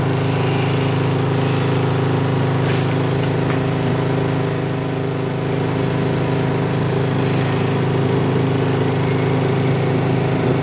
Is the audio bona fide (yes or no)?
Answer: yes